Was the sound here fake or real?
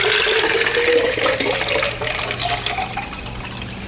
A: real